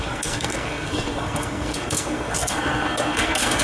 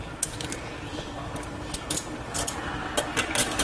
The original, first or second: second